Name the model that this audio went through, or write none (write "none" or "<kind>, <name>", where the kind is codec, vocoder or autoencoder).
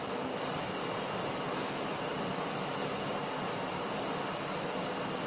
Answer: none